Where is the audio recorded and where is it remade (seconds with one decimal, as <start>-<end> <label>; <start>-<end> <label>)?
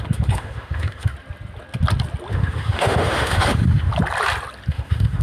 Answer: 0.0-1.1 remade; 1.1-2.3 recorded; 2.3-3.9 remade; 3.9-4.7 recorded; 4.7-5.2 remade